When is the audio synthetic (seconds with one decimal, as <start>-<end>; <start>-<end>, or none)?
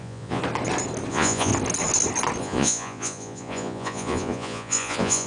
0.0-0.4; 1.1-1.5; 2.4-5.3